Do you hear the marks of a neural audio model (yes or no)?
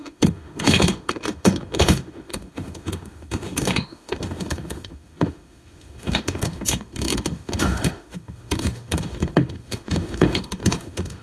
yes